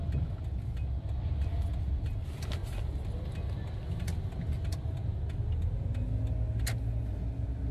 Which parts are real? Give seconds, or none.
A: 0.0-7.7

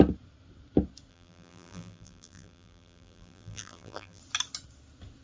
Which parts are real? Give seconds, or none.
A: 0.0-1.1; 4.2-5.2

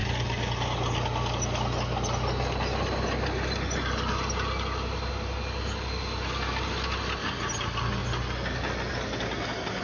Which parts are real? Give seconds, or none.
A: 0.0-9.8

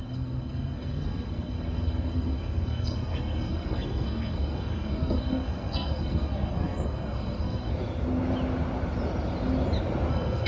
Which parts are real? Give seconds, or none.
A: 7.7-10.1

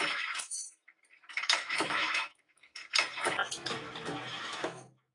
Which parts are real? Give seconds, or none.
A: 0.6-1.3; 2.8-4.4